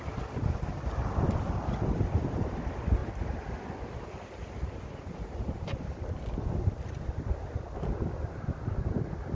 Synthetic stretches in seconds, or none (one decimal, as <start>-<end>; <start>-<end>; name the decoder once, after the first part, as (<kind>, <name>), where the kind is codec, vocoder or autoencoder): none